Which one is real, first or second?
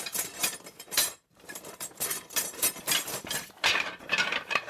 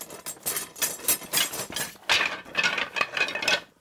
second